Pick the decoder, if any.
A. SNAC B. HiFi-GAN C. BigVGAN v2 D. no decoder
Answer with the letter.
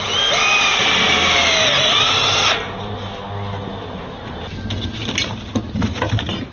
D